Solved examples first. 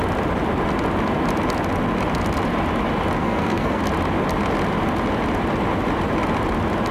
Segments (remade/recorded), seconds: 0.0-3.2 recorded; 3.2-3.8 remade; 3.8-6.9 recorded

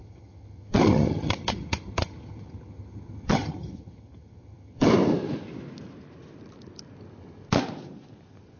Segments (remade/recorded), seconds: 0.0-4.9 remade; 4.9-8.6 recorded

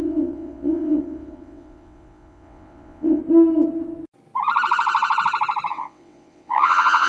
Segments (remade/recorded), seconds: 0.0-3.2 remade; 3.2-5.7 recorded; 5.7-7.1 remade

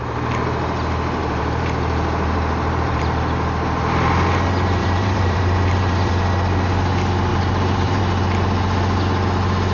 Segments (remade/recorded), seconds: 0.0-1.2 recorded; 1.2-3.0 remade; 3.0-4.8 recorded; 4.8-6.1 remade; 6.1-7.3 recorded; 7.3-8.0 remade; 8.0-9.7 recorded

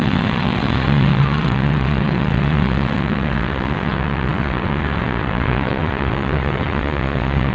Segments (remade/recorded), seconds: 0.0-7.5 remade

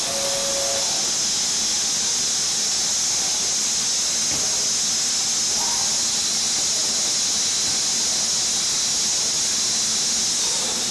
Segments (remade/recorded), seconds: 0.0-10.9 recorded

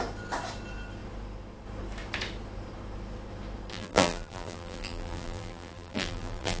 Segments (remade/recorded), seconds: 0.0-3.7 recorded; 3.7-6.6 remade